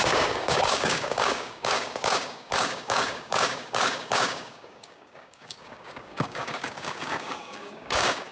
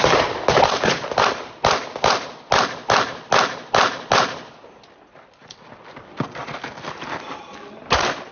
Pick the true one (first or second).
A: second